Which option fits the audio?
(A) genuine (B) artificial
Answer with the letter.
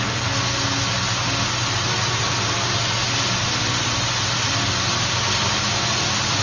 A